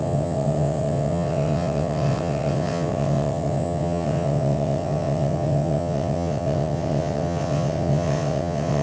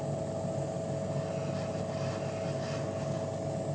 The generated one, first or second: first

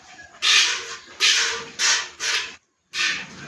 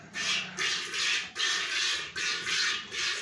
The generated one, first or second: first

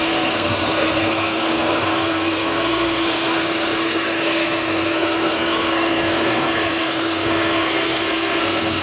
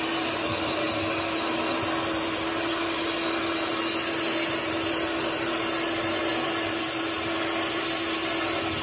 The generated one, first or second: first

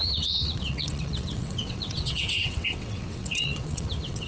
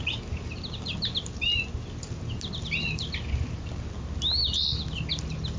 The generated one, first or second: first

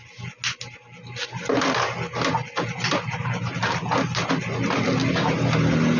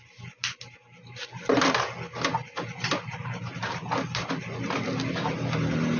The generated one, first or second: second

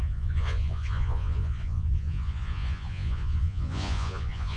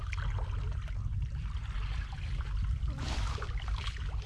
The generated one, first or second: first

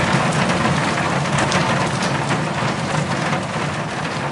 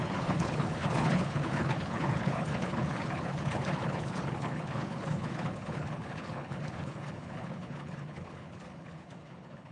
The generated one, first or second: second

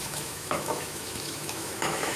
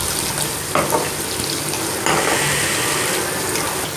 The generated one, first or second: first